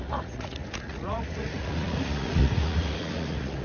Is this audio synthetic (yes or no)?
yes